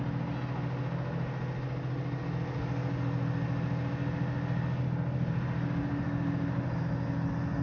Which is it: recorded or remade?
recorded